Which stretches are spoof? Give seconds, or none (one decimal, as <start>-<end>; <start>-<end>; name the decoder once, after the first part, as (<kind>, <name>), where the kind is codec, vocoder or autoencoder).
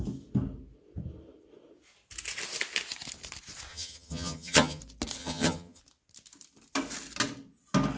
3.7-4.8 (vocoder, HiFi-GAN); 5.2-5.8